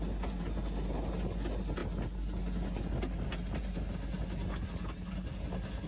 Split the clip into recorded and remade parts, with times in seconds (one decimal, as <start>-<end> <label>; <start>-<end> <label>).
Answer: 0.0-5.9 recorded